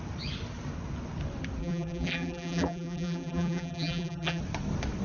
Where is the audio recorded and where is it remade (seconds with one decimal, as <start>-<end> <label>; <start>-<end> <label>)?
0.0-1.6 recorded; 1.6-4.4 remade; 4.4-5.0 recorded